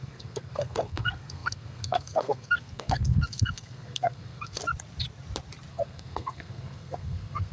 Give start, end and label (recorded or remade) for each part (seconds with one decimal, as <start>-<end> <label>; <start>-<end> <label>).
0.0-4.6 remade; 4.6-5.7 recorded; 5.7-7.5 remade